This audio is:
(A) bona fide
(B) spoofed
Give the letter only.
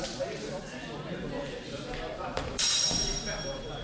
B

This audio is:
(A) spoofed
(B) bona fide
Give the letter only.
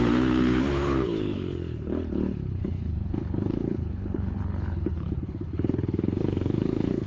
A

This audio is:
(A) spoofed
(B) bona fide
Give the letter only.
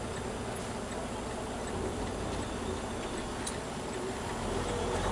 B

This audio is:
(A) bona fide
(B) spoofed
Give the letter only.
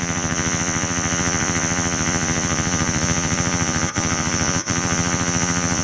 B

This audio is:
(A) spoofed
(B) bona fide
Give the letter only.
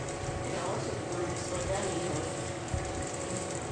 A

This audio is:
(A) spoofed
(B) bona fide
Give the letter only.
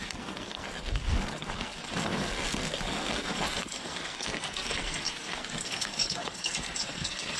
A